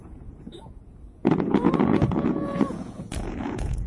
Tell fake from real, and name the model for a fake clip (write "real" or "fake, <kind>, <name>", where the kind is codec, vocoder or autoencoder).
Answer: fake, vocoder, Vocos